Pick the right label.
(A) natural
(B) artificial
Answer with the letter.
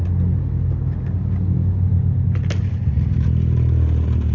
A